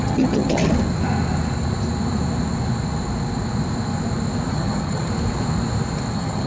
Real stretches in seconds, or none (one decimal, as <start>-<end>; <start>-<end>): 0.6-4.5; 5.1-6.1